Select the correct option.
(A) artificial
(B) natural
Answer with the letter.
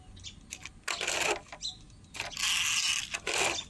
B